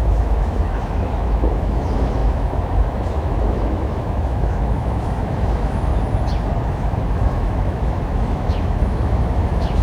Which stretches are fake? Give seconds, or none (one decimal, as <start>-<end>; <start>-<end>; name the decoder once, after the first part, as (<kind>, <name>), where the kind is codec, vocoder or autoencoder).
0.0-5.9 (autoencoder, DAC-VAE); 6.7-9.8